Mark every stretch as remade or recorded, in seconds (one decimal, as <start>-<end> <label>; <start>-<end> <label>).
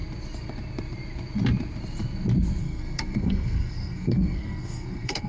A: 0.0-2.6 recorded; 2.6-5.3 remade